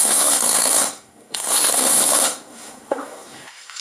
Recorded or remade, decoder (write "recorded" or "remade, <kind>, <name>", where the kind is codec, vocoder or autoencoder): remade, codec, SNAC